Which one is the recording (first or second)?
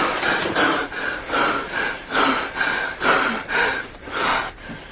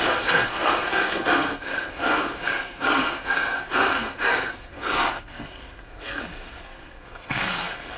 first